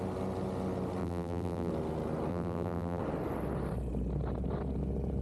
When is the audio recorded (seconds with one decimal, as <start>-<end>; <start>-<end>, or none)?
0.0-1.0; 1.7-2.3; 3.0-5.2